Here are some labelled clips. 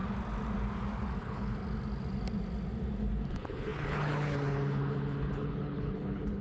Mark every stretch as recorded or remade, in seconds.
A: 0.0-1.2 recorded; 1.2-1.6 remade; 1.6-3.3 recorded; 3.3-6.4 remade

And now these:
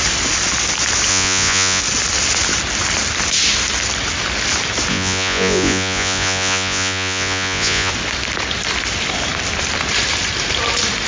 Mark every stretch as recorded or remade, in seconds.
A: 0.0-1.1 recorded; 1.1-1.8 remade; 1.8-4.9 recorded; 4.9-7.9 remade; 7.9-11.1 recorded